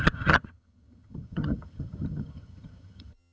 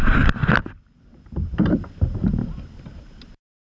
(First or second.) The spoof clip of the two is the first